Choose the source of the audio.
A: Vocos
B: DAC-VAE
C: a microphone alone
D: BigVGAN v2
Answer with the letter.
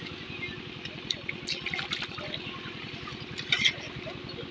C